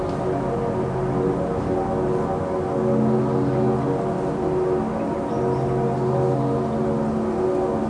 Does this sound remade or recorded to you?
recorded